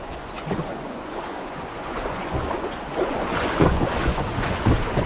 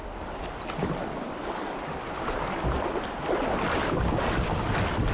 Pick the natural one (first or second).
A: second